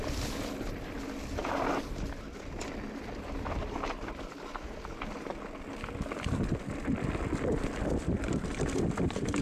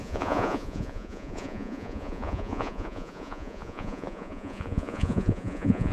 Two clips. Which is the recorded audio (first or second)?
first